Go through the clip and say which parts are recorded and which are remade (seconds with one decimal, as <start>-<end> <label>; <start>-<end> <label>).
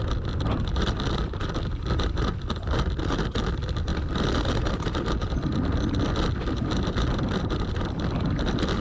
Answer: 0.0-3.9 remade; 3.9-4.7 recorded; 4.7-8.8 remade